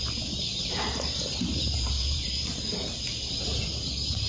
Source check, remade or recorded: remade